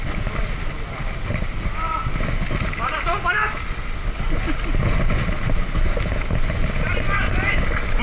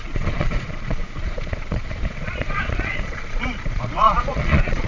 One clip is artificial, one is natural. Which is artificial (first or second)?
second